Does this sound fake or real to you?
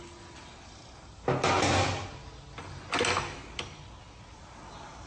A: real